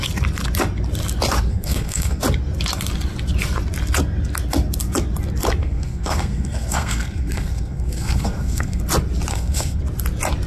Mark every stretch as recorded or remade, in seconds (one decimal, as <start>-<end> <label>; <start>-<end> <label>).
0.0-1.5 recorded; 1.5-2.2 remade; 2.2-5.6 recorded; 5.6-8.8 remade; 8.8-9.3 recorded; 9.3-9.8 remade; 9.8-10.5 recorded

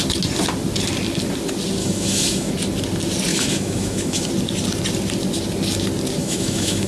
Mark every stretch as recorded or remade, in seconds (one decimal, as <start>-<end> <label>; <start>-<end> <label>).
0.0-1.8 recorded; 1.8-2.5 remade; 2.5-3.3 recorded; 3.3-4.3 remade; 4.3-6.2 recorded; 6.2-6.9 remade

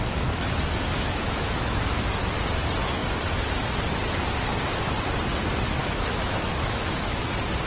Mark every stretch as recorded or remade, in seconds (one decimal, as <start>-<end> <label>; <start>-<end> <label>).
0.0-0.9 recorded; 0.9-2.0 remade; 2.0-5.8 recorded; 5.8-7.3 remade; 7.3-7.7 recorded

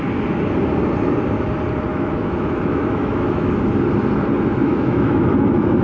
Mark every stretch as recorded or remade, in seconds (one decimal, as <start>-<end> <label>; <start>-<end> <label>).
0.0-1.9 recorded; 1.9-3.5 remade; 3.5-4.6 recorded; 4.6-5.8 remade

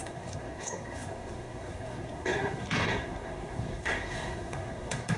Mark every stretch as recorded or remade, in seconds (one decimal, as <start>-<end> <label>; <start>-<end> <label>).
0.0-5.2 remade

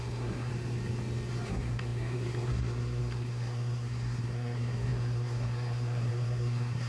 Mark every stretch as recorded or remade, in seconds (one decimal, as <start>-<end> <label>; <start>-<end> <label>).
0.0-0.5 remade; 0.5-1.5 recorded; 1.5-6.9 remade

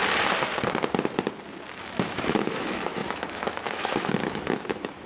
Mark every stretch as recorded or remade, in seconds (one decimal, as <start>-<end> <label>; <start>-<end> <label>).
0.0-1.8 recorded; 1.8-5.1 remade